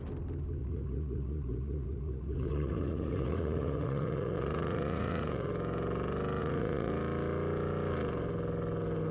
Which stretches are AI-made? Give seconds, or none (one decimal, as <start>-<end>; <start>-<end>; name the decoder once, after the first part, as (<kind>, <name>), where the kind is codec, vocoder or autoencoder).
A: 0.6-5.5 (vocoder, Vocos); 6.4-6.9